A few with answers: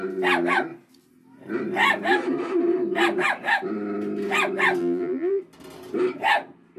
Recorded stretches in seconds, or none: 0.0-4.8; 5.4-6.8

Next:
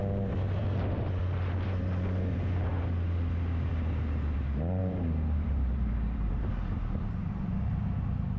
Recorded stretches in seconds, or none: 0.0-4.8; 6.5-7.2

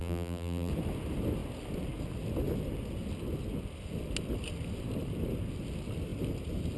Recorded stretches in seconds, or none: 0.7-6.8

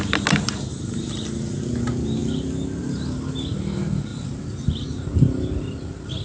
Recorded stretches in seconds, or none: 0.0-0.7; 1.6-6.2

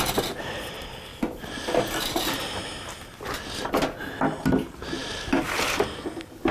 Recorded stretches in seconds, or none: 0.0-1.1; 1.8-5.0; 5.8-6.5

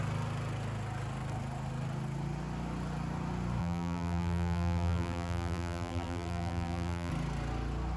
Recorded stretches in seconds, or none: 0.0-3.6; 7.1-8.0

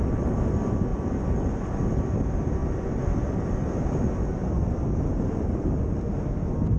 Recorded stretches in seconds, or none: 0.0-2.6; 3.5-5.1; 5.7-6.8

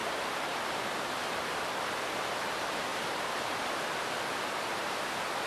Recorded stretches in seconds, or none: 0.8-2.9; 3.8-5.5